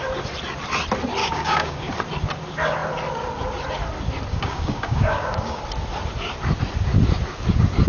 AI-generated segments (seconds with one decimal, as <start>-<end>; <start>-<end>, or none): 1.2-1.9; 4.3-5.6